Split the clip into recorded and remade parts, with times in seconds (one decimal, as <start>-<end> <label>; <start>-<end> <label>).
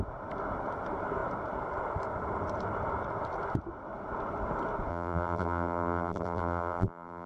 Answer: 0.0-4.9 recorded; 4.9-7.3 remade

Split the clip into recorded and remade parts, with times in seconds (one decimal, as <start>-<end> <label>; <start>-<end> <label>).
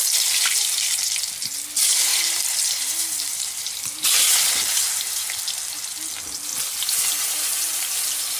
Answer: 0.0-2.1 recorded; 2.1-5.3 remade; 5.3-8.4 recorded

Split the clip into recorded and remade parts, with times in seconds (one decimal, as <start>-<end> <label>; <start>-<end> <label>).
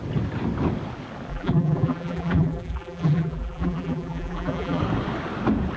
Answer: 0.0-1.3 recorded; 1.3-4.8 remade; 4.8-5.8 recorded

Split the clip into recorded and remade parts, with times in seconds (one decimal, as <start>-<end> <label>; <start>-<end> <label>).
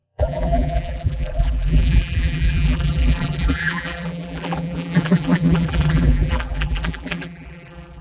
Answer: 0.0-8.0 remade